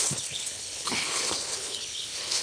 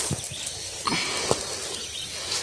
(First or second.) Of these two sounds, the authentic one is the second